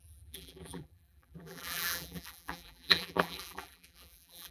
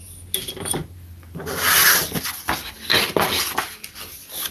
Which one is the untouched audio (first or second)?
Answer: second